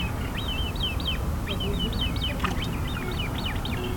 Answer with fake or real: real